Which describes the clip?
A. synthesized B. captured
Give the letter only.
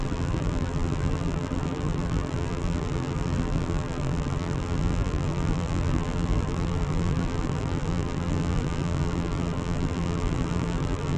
A